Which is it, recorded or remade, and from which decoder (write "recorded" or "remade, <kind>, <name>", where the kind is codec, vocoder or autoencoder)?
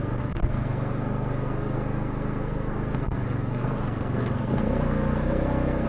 remade, codec, SNAC